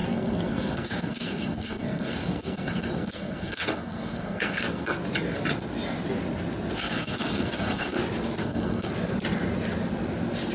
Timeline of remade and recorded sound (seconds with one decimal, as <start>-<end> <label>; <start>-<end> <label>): 0.0-5.0 remade; 5.0-6.8 recorded; 6.8-8.0 remade; 8.0-8.4 recorded; 8.4-8.9 remade; 8.9-10.5 recorded